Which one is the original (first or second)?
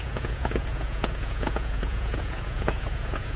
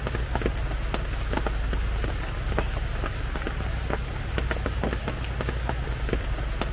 second